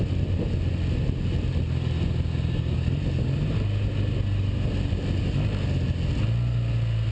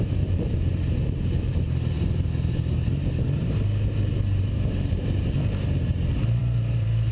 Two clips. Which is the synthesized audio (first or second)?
second